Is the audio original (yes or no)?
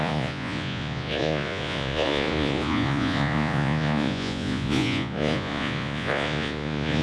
no